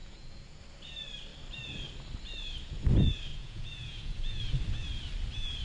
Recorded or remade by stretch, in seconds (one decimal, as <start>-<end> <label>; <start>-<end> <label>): 0.0-0.6 remade; 0.6-3.3 recorded; 3.3-4.4 remade; 4.4-5.6 recorded